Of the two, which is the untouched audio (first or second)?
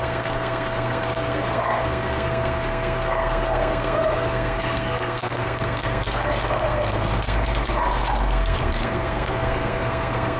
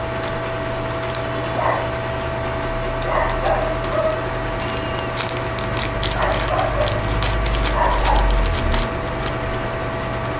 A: second